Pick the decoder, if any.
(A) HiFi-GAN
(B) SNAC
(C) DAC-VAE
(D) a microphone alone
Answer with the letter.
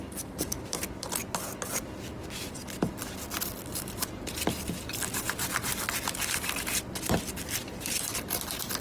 D